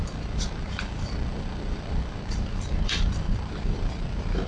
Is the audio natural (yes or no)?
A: no